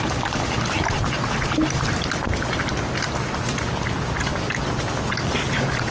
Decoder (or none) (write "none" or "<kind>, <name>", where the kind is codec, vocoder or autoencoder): none